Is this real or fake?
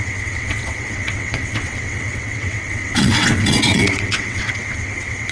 fake